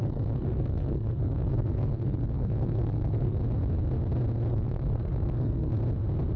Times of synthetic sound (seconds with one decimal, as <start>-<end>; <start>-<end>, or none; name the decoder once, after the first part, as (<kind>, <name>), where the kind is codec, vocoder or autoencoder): 0.0-3.4 (codec, SNAC); 4.5-5.8